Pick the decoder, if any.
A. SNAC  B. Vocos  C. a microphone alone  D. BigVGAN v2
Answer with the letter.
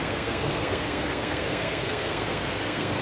A